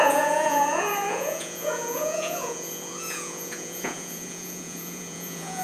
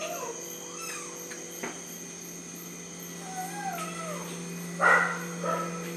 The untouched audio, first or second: second